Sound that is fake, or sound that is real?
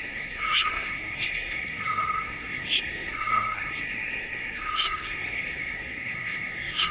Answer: fake